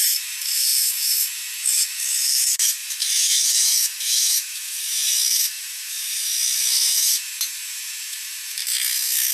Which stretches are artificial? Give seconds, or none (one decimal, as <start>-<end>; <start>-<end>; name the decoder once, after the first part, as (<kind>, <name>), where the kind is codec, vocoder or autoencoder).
0.0-9.3 (autoencoder, DAC-VAE)